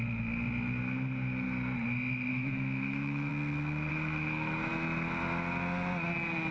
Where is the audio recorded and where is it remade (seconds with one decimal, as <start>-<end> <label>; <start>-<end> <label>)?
0.0-2.3 recorded; 2.3-3.3 remade; 3.3-3.9 recorded; 3.9-4.7 remade; 4.7-6.5 recorded